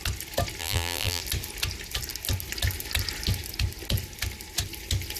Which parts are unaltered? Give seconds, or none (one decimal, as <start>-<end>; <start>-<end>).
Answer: 0.0-0.6; 1.2-5.2